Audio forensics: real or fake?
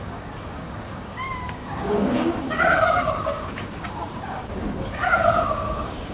fake